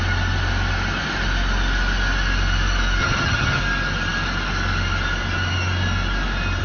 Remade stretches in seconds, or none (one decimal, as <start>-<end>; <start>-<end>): 3.0-3.6